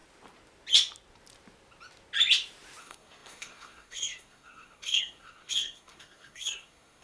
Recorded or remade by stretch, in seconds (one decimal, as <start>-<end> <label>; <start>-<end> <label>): 0.0-2.8 recorded; 2.8-7.0 remade